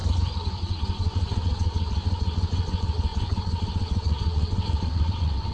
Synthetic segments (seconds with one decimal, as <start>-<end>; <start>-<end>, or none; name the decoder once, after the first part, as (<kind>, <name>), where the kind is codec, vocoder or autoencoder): 0.6-5.5 (vocoder, WaveNeXt)